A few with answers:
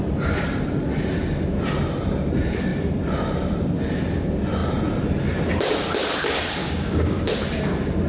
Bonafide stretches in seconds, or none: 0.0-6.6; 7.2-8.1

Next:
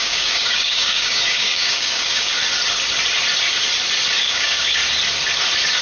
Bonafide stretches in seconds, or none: 2.3-4.2; 4.8-5.8

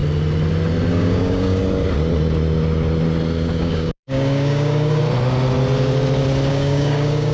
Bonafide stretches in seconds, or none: 0.0-0.9; 1.6-3.6; 5.0-6.5

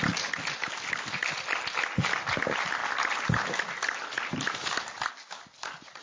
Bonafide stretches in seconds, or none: 0.0-6.0

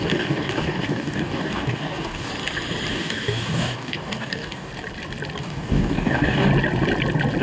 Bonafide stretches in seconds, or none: 2.3-2.9; 4.7-5.4; 6.5-7.4

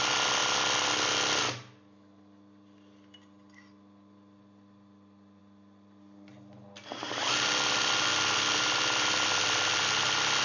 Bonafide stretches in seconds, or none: 0.0-10.4

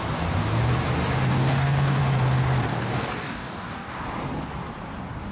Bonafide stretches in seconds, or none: 0.0-1.3; 2.0-2.7; 3.9-5.3